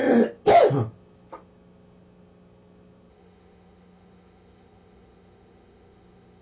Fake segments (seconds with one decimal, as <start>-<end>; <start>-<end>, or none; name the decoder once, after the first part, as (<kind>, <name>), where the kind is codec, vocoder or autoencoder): 3.1-6.4 (autoencoder, DAC-VAE)

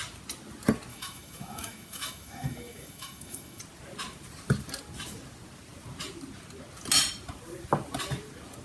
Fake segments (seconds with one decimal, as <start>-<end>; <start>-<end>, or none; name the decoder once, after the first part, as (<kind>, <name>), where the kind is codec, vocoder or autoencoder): 0.9-3.6 (autoencoder, DAC-VAE)

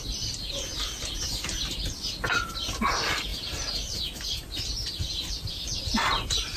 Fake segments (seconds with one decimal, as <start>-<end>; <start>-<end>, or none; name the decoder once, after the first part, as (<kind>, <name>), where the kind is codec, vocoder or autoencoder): none